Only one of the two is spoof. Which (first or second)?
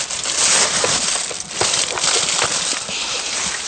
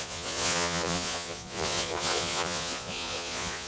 second